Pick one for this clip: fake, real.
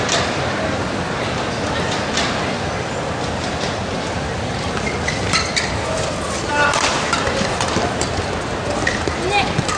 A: real